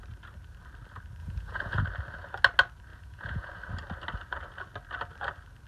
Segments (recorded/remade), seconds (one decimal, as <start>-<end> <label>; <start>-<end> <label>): 0.0-1.2 recorded; 1.2-1.8 remade; 1.8-2.9 recorded; 2.9-3.5 remade; 3.5-5.7 recorded

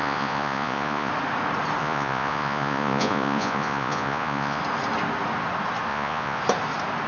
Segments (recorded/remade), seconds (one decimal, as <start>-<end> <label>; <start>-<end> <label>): 0.0-1.1 remade; 1.1-1.8 recorded; 1.8-4.6 remade; 4.6-5.9 recorded; 5.9-6.4 remade; 6.4-7.1 recorded

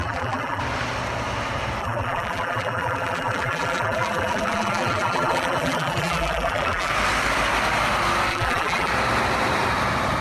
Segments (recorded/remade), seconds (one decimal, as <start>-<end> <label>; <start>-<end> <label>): 0.0-0.6 remade; 0.6-1.8 recorded; 1.8-6.9 remade; 6.9-8.3 recorded; 8.3-8.9 remade; 8.9-10.2 recorded

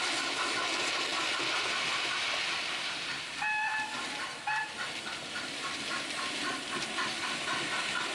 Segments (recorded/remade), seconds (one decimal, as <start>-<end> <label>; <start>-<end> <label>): 0.0-8.1 recorded

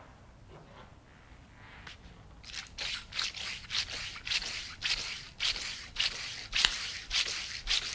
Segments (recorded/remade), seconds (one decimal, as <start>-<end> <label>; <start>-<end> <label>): 0.0-7.9 recorded